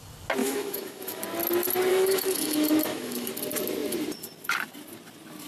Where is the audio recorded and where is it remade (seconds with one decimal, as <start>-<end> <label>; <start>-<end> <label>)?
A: 0.0-0.4 recorded; 0.4-1.2 remade; 1.2-1.9 recorded; 1.9-3.3 remade; 3.3-5.5 recorded